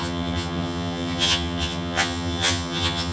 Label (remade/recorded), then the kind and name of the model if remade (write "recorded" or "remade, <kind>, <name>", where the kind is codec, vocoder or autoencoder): remade, vocoder, HiFi-GAN